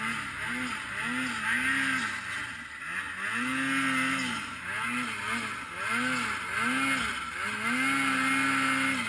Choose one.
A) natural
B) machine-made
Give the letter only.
A